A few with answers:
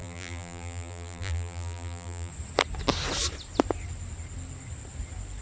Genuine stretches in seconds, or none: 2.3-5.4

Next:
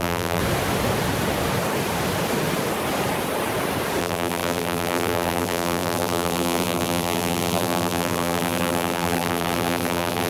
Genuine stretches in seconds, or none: 0.4-4.0